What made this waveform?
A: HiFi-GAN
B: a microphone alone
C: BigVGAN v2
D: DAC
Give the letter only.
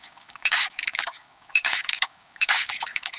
D